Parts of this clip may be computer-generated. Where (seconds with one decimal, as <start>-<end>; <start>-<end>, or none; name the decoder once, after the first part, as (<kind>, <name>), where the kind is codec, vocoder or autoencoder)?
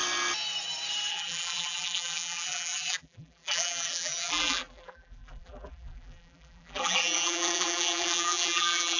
1.1-9.0 (vocoder, BigVGAN v2)